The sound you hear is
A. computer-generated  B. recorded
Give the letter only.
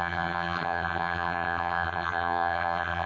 A